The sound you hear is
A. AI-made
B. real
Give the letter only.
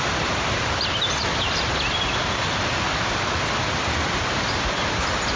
B